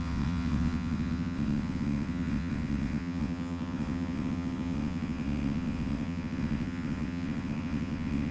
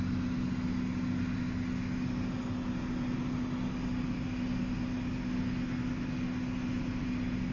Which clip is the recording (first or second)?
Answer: second